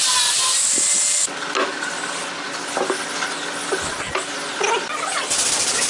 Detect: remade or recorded recorded